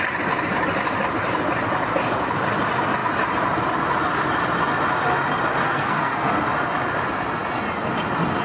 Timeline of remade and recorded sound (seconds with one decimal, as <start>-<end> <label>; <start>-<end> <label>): 0.0-5.6 recorded; 5.6-6.3 remade; 6.3-8.4 recorded

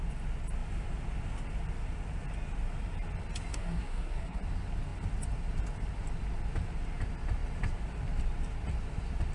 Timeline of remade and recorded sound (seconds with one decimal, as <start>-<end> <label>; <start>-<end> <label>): 0.0-3.5 recorded; 3.5-4.4 remade; 4.4-9.3 recorded

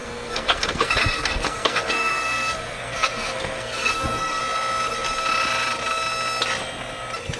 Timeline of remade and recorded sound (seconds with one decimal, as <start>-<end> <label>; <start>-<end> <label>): 0.0-4.4 remade; 4.4-7.4 recorded

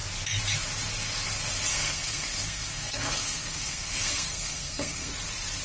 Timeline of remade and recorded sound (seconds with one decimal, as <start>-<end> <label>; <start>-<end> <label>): 0.0-1.7 recorded; 1.7-5.1 remade; 5.1-5.6 recorded

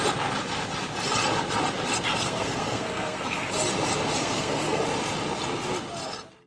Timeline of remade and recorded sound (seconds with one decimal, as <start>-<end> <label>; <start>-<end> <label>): 0.0-2.2 recorded; 2.2-3.5 remade; 3.5-4.2 recorded; 4.2-4.8 remade; 4.8-6.5 recorded